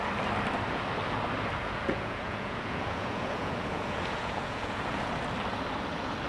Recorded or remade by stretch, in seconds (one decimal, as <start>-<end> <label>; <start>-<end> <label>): 0.0-1.6 recorded; 1.6-5.1 remade; 5.1-6.3 recorded